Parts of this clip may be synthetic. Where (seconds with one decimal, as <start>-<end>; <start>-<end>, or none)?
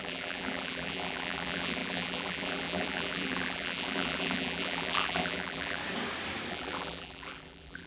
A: 0.0-5.8; 6.5-7.9